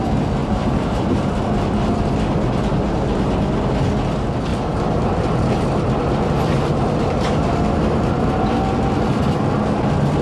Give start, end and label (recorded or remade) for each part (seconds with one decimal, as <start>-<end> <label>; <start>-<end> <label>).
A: 0.0-0.4 recorded; 0.4-1.4 remade; 1.4-4.5 recorded; 4.5-7.7 remade; 7.7-10.2 recorded